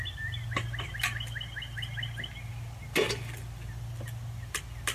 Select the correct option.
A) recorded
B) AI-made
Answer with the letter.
A